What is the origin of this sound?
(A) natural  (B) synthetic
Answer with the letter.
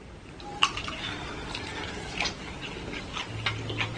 A